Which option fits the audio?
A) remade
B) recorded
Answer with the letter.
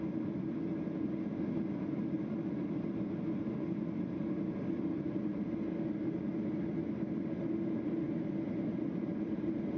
B